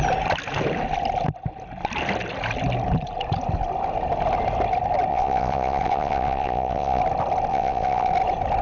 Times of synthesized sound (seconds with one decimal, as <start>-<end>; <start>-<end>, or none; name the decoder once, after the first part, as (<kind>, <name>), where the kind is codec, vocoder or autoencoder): 5.1-7.0 (vocoder, WaveNeXt); 7.5-8.1